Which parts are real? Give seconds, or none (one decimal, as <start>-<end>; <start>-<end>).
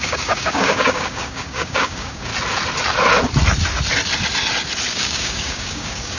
2.3-4.9